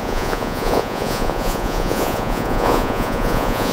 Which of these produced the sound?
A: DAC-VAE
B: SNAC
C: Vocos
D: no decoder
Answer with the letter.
C